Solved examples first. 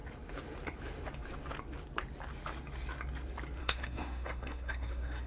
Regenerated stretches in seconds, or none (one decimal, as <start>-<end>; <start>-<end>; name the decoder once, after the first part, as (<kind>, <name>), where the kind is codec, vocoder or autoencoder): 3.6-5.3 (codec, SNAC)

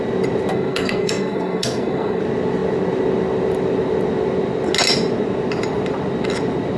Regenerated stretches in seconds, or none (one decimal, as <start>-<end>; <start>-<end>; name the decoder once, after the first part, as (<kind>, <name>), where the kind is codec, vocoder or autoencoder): 0.5-2.2 (codec, SNAC)

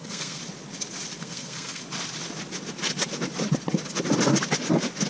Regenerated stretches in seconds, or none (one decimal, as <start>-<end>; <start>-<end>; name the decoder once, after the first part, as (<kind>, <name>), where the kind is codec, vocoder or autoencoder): 0.0-0.4 (codec, SNAC); 1.2-1.8